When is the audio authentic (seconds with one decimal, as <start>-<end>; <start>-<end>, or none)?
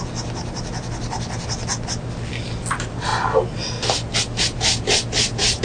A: 0.0-5.6